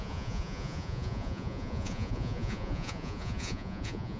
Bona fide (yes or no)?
no